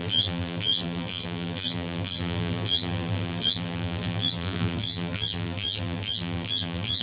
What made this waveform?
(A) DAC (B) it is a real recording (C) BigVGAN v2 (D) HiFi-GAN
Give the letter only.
C